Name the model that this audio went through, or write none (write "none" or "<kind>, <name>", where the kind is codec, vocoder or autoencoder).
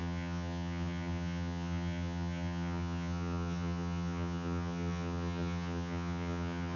vocoder, HiFi-GAN